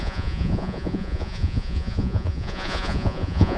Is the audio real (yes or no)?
no